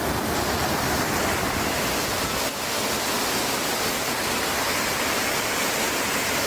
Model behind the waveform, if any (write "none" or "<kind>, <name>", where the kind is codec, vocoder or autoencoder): none